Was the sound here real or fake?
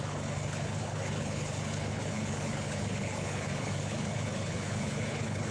fake